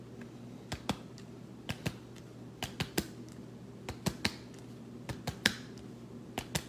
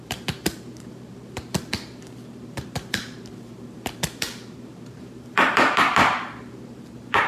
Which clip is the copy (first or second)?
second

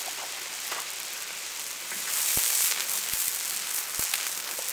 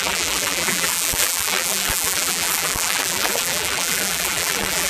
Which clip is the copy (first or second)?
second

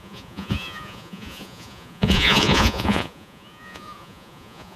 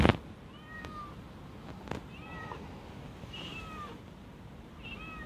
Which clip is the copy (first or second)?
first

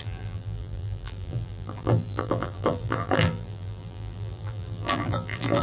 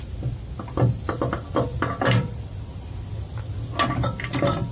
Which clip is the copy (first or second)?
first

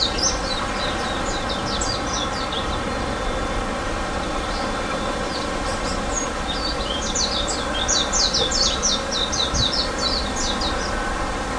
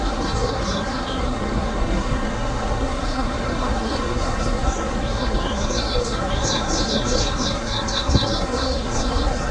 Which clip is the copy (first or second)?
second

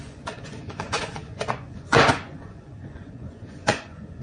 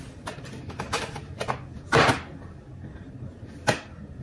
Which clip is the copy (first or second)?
first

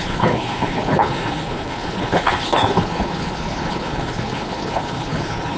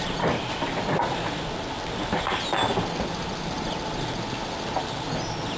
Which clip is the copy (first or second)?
first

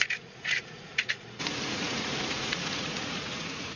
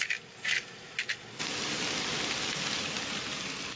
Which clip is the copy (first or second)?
first